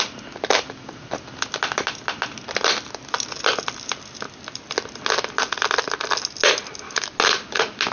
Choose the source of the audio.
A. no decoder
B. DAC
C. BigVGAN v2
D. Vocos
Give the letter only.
A